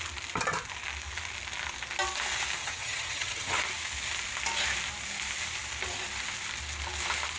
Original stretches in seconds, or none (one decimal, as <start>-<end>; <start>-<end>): 0.0-2.6; 3.6-7.4